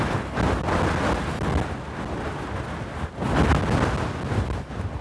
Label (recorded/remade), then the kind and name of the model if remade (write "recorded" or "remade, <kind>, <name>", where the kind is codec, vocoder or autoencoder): recorded